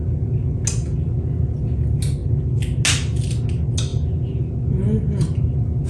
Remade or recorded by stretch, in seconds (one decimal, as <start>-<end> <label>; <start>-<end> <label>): 0.0-5.9 recorded